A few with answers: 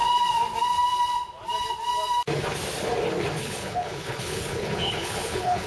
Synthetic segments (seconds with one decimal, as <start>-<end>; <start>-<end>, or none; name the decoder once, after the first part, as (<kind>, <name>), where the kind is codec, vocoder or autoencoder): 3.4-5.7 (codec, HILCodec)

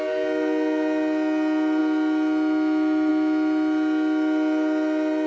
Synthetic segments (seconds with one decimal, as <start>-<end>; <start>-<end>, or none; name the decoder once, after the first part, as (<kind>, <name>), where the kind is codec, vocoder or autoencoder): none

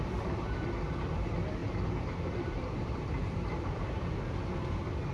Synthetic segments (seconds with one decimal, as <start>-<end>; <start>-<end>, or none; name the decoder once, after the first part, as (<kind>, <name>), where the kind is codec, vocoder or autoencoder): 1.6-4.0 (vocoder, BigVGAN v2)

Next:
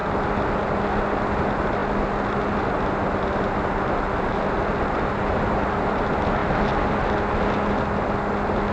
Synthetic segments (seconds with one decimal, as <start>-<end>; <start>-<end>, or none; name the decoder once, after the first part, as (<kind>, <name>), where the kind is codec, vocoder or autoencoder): none

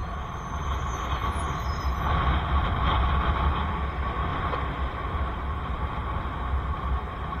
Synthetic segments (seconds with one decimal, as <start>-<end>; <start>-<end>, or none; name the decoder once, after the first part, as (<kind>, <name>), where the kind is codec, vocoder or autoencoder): 4.3-6.2 (vocoder, BigVGAN v2)